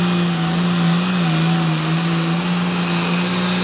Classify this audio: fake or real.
real